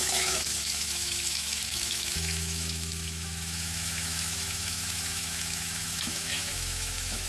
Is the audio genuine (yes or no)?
no